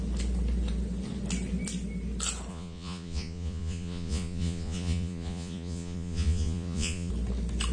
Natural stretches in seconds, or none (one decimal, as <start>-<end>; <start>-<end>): 0.0-2.5; 7.1-7.7